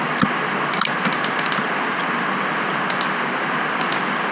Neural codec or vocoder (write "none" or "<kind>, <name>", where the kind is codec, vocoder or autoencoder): none